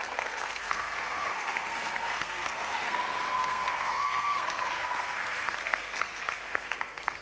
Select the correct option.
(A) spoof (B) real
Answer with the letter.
A